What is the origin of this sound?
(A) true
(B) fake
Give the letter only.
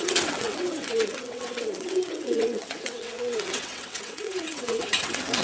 B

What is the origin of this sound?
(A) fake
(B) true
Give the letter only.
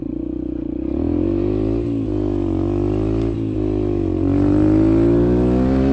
B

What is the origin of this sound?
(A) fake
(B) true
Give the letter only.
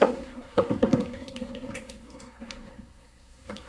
A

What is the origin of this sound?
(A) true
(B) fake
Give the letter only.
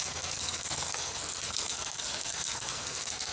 B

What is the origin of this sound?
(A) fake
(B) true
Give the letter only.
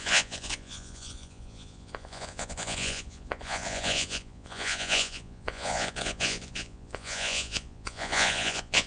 A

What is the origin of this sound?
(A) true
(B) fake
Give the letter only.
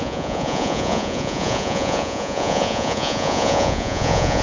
B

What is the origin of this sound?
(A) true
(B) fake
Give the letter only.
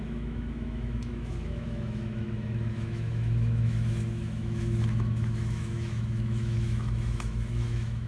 B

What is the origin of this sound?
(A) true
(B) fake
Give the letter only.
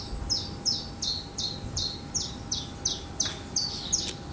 A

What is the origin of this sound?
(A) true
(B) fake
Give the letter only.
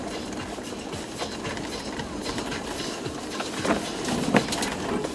A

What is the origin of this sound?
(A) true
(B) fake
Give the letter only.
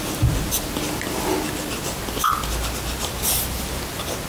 A